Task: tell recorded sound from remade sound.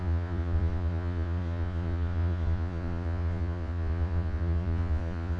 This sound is remade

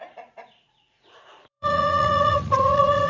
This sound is remade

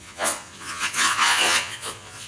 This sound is remade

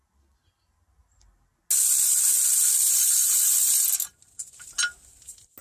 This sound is recorded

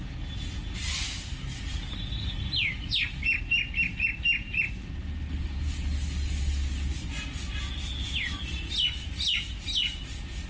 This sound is recorded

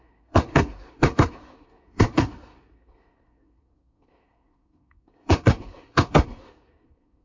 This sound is remade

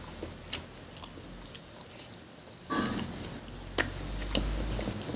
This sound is recorded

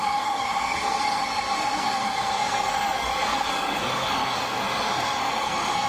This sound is remade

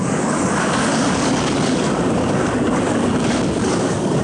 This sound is remade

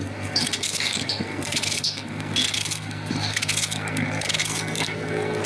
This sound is remade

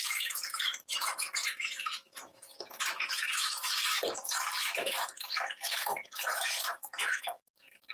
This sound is remade